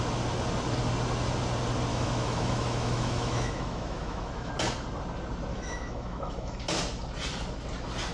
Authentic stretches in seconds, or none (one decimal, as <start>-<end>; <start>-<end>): 0.0-1.9; 4.5-5.5; 6.6-8.1